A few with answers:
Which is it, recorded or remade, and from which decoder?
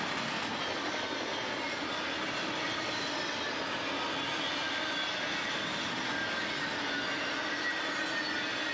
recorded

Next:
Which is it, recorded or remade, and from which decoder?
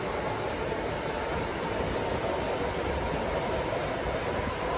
recorded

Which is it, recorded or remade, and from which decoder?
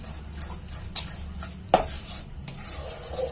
recorded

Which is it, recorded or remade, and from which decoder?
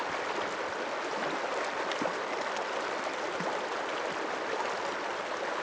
recorded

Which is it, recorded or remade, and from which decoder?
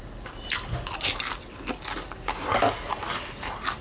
recorded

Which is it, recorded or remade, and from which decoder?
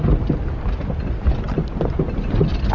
recorded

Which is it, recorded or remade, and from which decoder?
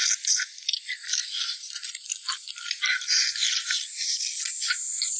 recorded